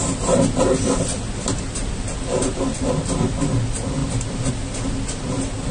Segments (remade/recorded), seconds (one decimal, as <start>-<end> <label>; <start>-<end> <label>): 0.0-5.7 recorded